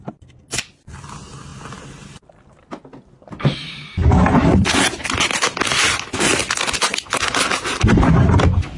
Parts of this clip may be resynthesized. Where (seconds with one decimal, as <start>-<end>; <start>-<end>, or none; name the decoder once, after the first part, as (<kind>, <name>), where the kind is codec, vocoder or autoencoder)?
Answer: none